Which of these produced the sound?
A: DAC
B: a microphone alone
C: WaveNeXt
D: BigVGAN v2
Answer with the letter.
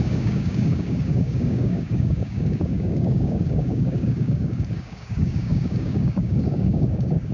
A